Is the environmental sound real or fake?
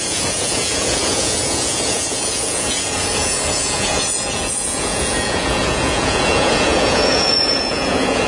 fake